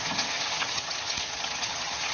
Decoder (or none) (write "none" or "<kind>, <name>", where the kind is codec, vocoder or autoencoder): vocoder, HiFi-GAN